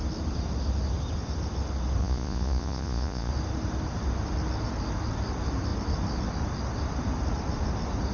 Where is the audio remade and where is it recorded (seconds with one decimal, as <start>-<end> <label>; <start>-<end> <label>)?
0.0-2.0 recorded; 2.0-3.3 remade; 3.3-8.1 recorded